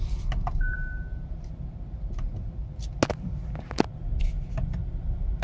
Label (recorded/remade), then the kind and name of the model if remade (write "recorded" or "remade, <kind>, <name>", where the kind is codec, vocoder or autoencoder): recorded